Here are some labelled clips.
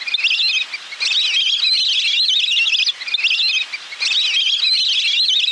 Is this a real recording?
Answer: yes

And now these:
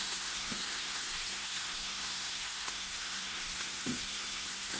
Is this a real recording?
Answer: no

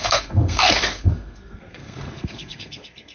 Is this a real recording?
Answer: no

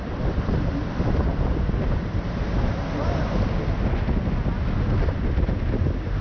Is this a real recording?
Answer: yes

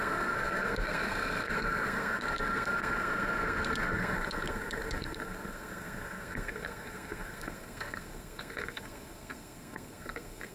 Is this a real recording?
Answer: no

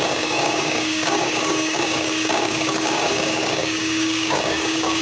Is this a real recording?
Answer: no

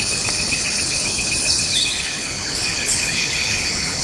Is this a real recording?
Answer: no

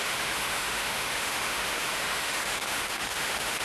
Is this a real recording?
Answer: no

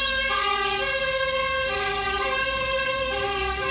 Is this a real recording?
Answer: no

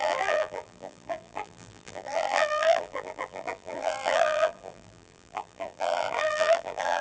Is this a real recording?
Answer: no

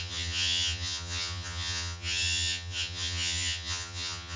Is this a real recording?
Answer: no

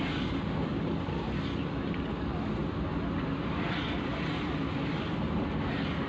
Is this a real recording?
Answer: yes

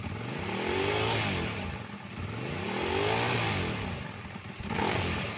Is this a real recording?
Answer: yes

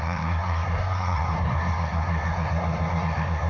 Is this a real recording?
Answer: no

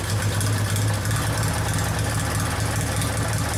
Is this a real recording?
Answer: yes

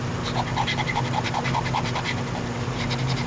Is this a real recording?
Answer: yes